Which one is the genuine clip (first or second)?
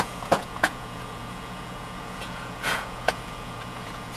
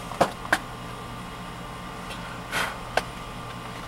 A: second